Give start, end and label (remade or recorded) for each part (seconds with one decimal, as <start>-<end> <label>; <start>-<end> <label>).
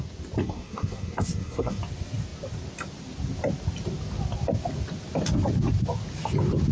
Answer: 0.0-0.4 recorded; 0.4-1.8 remade; 1.8-6.7 recorded